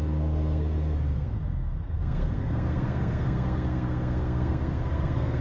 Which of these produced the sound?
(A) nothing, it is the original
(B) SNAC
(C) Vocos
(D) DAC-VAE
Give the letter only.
B